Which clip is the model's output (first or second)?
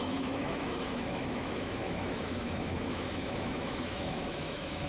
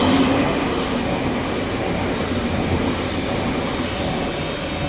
first